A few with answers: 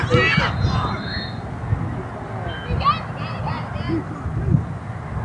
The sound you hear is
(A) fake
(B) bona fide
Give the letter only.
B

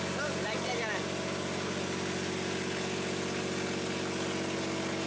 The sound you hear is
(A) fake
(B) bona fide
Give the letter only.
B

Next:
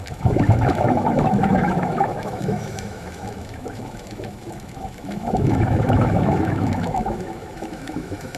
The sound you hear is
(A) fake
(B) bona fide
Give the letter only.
A